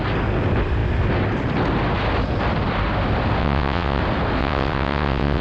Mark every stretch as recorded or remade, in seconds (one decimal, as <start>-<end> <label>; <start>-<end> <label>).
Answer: 0.0-3.4 recorded; 3.4-4.0 remade; 4.0-4.4 recorded; 4.4-5.4 remade